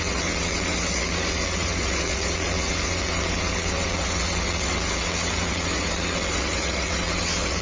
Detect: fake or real fake